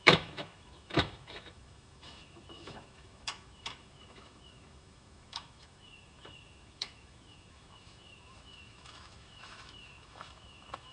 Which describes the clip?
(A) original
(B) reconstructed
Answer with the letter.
B